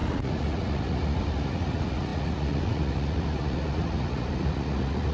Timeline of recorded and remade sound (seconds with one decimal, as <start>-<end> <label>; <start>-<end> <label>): 0.0-5.1 remade